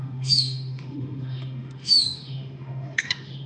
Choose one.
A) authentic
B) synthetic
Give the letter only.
B